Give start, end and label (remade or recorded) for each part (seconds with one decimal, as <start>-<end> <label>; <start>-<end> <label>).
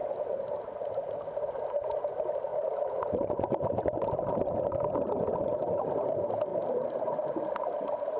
0.0-2.5 recorded; 2.5-3.8 remade; 3.8-6.5 recorded; 6.5-7.5 remade; 7.5-8.2 recorded